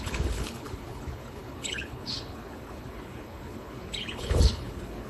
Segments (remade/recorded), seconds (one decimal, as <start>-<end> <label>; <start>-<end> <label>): 0.0-5.1 remade